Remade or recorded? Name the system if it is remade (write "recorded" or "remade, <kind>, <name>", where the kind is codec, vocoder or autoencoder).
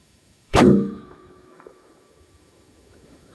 remade, autoencoder, DAC-VAE